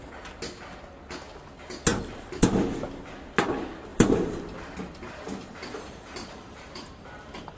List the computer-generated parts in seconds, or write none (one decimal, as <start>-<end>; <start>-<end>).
1.9-2.6; 3.9-7.6